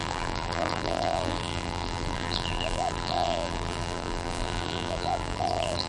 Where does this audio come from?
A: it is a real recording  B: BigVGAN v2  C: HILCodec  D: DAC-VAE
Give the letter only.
B